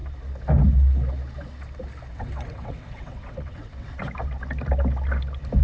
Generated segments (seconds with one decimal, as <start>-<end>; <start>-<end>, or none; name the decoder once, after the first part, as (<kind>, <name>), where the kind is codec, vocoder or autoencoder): 2.1-4.0 (vocoder, WaveNeXt)